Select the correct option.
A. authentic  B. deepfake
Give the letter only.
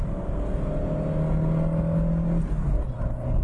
A